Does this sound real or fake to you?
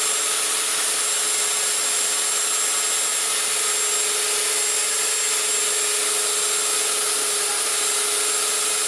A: real